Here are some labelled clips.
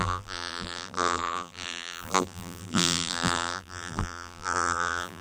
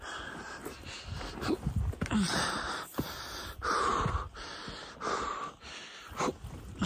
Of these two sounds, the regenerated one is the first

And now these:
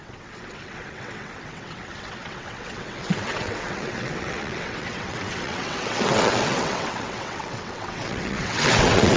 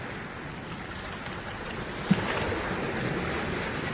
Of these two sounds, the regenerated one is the first